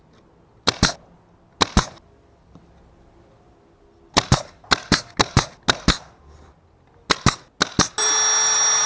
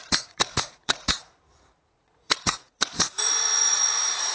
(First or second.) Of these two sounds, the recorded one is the first